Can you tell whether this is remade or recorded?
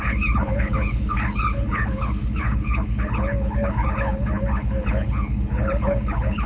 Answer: remade